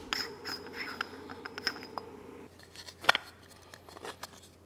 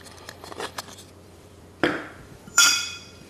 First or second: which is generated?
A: second